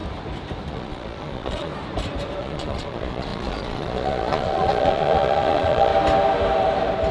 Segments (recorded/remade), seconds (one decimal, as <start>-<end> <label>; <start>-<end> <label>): 0.0-0.7 recorded; 0.7-1.7 remade; 1.7-2.4 recorded; 2.4-5.9 remade; 5.9-7.1 recorded